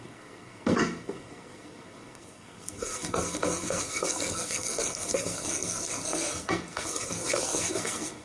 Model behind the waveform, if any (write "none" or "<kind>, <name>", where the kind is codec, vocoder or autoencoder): codec, SNAC